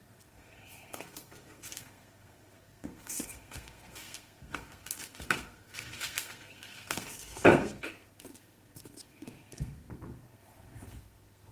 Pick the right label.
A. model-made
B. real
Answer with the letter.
A